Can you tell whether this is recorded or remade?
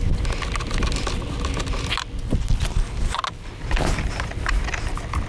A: recorded